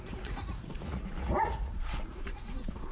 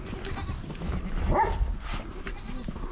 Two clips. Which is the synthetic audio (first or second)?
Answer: first